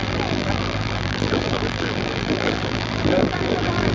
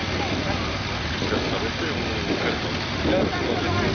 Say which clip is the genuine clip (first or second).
second